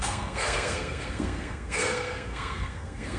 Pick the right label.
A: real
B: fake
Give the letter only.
B